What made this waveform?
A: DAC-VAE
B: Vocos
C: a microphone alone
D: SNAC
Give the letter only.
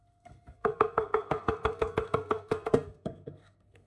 D